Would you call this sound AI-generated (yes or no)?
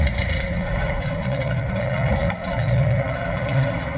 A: yes